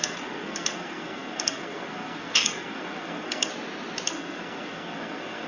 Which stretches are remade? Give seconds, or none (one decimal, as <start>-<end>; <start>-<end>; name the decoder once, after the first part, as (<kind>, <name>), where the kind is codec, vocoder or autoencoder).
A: 0.0-3.5 (codec, SNAC); 4.1-5.5